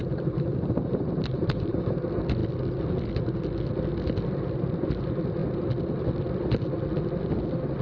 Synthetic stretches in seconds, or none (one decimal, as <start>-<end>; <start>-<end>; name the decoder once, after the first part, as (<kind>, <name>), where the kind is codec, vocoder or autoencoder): 0.0-2.0 (vocoder, BigVGAN v2)